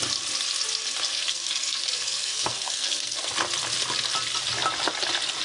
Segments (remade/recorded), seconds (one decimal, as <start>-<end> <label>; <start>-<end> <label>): 0.0-1.1 recorded; 1.1-3.3 remade; 3.3-5.4 recorded